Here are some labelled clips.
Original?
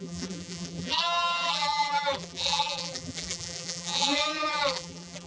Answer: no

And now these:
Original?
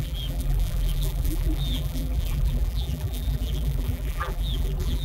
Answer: no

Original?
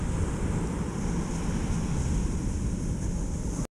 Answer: yes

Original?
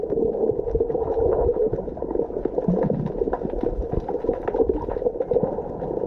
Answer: yes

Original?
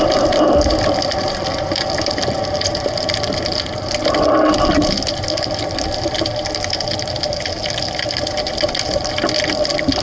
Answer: yes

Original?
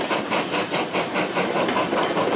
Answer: yes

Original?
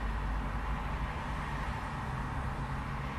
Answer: yes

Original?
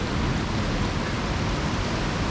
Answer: no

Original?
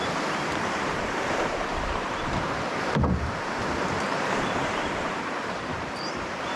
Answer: no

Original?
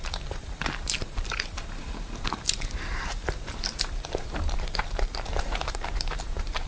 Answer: no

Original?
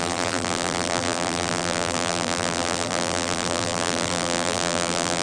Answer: no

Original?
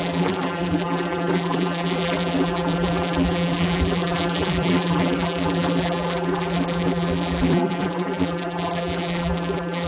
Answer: no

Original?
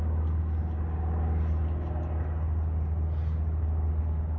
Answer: yes